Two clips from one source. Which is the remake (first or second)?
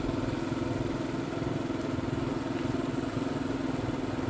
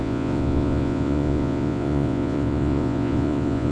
second